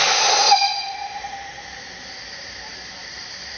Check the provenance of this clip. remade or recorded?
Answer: remade